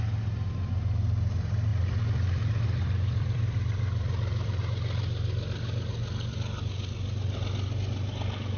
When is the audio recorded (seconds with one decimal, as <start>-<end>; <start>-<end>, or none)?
0.0-1.7; 4.6-8.6